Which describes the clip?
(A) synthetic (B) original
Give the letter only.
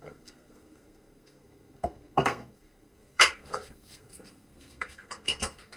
A